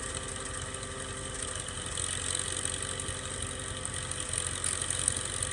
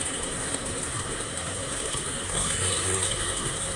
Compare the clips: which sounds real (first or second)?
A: first